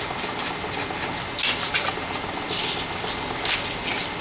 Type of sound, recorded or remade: recorded